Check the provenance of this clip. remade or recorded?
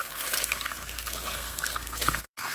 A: remade